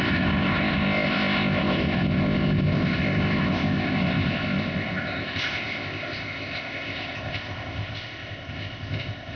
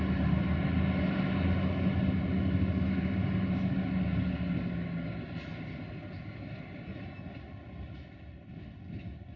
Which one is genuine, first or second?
second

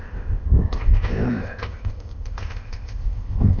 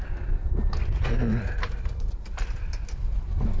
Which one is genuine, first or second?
second